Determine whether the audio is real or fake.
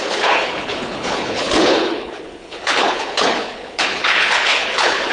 fake